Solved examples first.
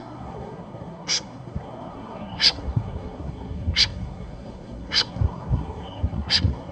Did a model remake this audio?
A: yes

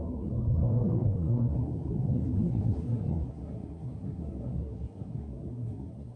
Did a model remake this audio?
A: yes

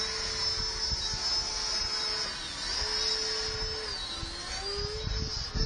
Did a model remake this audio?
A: no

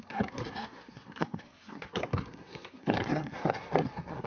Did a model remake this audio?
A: yes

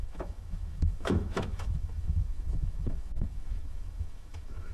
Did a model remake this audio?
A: yes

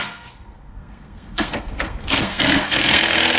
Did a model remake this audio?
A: yes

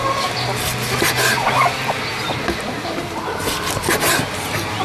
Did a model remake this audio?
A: no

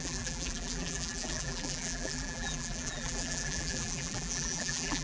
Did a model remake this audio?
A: yes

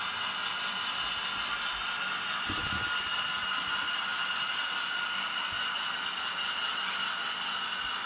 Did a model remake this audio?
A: no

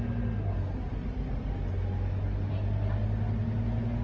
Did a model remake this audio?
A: no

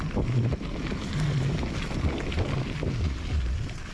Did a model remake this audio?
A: no